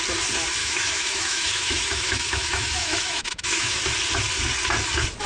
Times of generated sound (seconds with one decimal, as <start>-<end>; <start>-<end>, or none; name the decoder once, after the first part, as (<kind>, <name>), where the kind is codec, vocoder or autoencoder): 0.6-3.8 (autoencoder, DAC-VAE)